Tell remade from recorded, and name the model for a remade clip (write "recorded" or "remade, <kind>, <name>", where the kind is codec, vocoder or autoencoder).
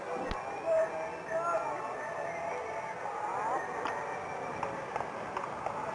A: recorded